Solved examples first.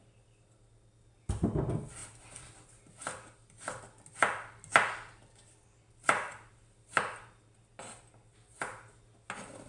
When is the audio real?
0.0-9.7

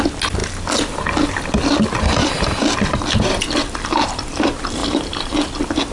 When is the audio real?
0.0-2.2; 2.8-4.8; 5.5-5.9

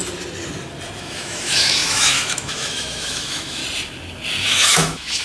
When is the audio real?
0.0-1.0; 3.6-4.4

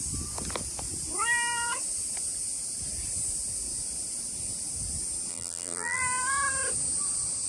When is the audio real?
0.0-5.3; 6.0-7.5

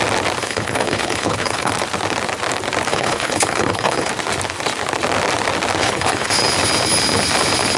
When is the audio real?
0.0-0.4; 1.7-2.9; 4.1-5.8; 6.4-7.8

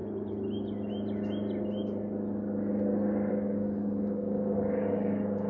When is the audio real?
0.0-3.3

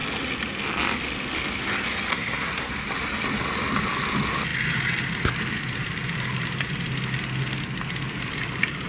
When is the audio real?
0.0-2.1; 2.7-8.9

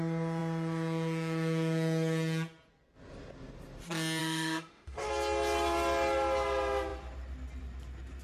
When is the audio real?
0.0-4.2; 5.1-8.2